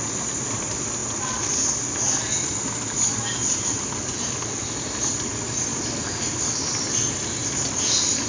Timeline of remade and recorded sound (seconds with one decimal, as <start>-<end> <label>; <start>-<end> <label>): 0.0-8.3 recorded